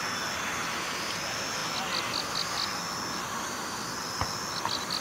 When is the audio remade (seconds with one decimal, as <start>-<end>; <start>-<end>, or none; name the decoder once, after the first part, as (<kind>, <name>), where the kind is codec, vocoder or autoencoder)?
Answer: none